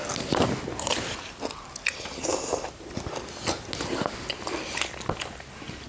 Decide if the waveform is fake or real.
real